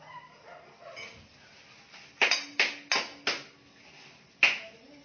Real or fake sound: real